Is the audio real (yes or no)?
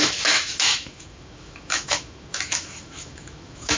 no